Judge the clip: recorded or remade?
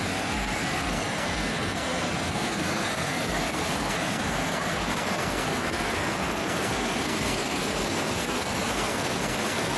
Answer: remade